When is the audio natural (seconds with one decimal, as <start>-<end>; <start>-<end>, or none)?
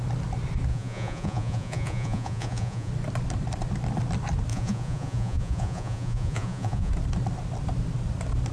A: 0.0-0.7; 2.9-4.5; 6.9-8.5